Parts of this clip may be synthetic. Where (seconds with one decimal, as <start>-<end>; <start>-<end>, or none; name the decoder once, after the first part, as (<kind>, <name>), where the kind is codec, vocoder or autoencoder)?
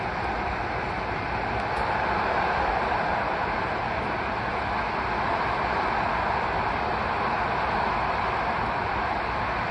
2.7-4.0 (vocoder, BigVGAN v2)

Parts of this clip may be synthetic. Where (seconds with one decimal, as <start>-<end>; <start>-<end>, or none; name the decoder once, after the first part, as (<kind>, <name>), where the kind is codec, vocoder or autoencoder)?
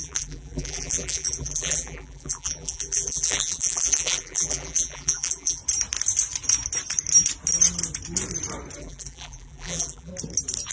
0.0-5.6 (vocoder, BigVGAN v2); 8.8-10.1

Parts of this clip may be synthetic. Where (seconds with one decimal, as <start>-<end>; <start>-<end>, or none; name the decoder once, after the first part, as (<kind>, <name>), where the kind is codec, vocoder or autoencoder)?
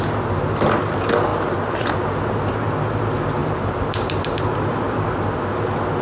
1.3-1.9 (vocoder, BigVGAN v2); 3.4-5.4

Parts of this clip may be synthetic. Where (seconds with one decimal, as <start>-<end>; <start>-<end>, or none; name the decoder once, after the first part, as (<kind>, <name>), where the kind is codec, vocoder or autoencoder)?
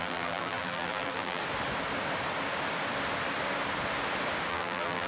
0.0-1.4 (vocoder, BigVGAN v2); 4.5-5.1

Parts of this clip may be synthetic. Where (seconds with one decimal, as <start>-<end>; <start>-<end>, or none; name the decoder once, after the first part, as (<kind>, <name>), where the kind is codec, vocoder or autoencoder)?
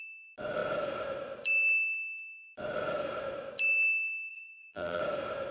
4.3-5.0 (vocoder, BigVGAN v2)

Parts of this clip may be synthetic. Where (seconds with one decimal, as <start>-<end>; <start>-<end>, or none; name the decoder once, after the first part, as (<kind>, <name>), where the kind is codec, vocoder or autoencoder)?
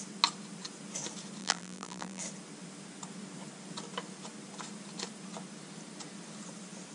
1.4-2.2 (vocoder, BigVGAN v2)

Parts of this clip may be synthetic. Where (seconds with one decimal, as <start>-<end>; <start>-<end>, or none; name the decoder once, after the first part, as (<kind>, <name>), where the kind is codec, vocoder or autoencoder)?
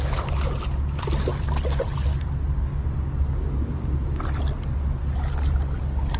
none